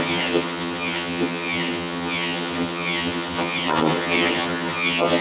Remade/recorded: remade